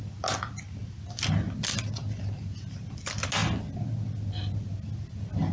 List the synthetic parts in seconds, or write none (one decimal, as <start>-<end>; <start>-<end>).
none